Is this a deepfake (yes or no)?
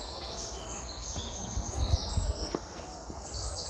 yes